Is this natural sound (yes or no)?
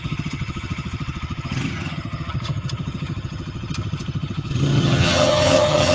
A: no